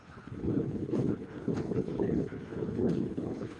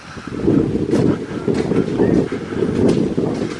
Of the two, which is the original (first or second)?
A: second